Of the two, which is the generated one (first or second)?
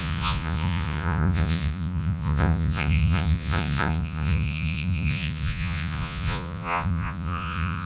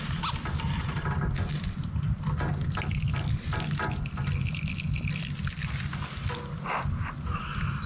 first